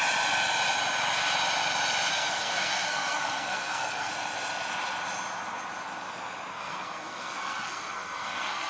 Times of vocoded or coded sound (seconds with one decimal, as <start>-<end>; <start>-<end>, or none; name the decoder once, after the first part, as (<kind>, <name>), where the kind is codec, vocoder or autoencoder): 2.1-4.1 (codec, SNAC); 6.5-8.7